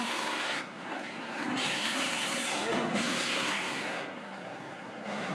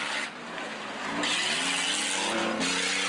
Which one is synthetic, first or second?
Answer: first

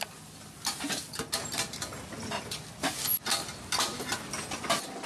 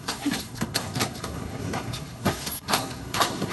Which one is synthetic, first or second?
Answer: second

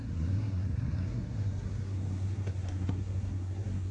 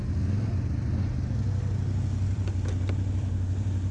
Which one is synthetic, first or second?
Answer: first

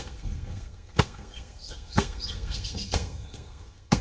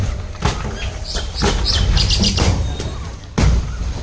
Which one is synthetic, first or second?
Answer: first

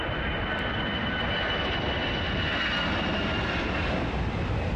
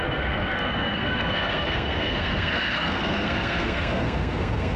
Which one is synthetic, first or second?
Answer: second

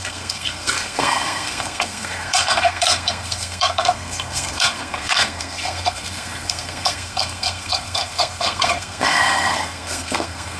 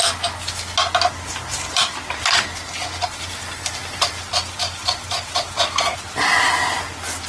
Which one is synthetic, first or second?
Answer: first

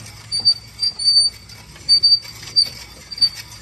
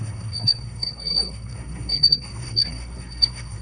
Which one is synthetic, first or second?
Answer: second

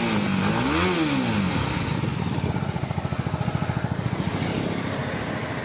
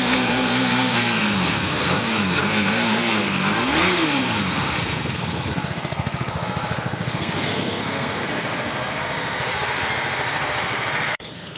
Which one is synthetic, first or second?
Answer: second